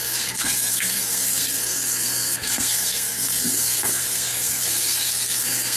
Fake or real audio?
fake